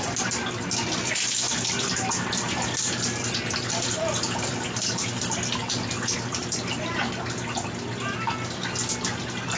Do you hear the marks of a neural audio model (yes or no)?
no